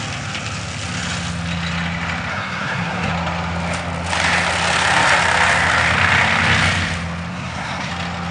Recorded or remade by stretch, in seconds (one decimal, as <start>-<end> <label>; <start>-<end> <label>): 0.0-2.3 recorded; 2.3-3.1 remade; 3.1-7.3 recorded; 7.3-7.9 remade; 7.9-8.3 recorded

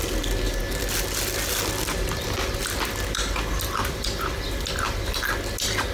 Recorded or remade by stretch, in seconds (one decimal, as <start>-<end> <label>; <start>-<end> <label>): 0.0-5.9 recorded

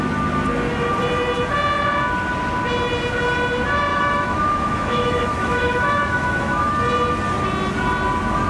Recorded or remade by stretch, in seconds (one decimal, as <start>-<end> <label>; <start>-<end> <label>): 0.0-3.9 recorded; 3.9-6.7 remade; 6.7-8.5 recorded

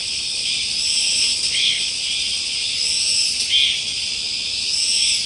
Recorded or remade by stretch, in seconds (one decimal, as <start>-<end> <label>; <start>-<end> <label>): 0.0-0.5 remade; 0.5-1.0 recorded; 1.0-1.9 remade; 1.9-5.3 recorded

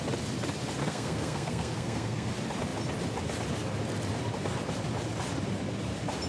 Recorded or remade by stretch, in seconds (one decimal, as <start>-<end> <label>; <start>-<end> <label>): 0.0-0.8 recorded; 0.8-2.3 remade; 2.3-6.3 recorded